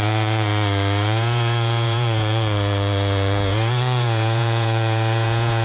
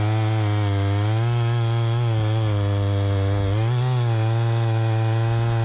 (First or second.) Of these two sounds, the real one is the second